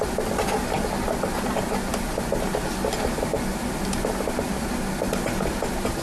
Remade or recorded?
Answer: recorded